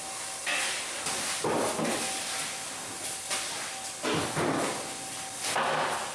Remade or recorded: recorded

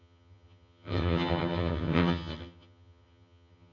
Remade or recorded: remade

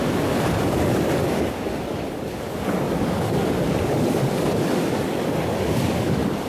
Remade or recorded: remade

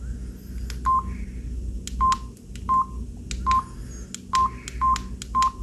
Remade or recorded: recorded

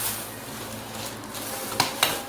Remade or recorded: recorded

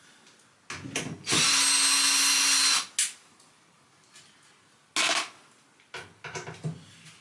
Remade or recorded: recorded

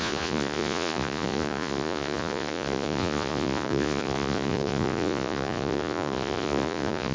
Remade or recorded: remade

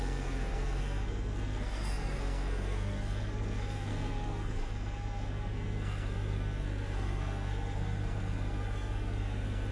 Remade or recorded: remade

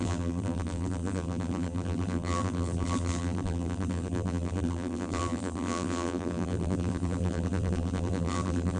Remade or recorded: remade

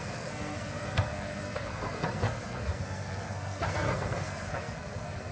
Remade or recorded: remade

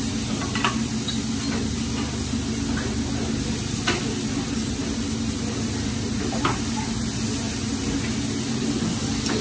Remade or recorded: recorded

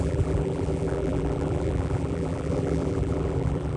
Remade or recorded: remade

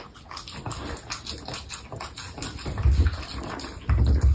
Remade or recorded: recorded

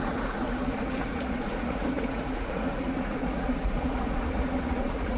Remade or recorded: remade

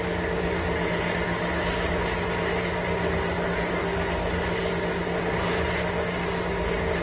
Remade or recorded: recorded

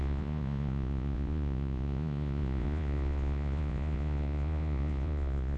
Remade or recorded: remade